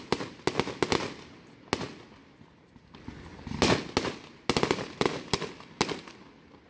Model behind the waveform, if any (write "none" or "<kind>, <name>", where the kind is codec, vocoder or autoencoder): none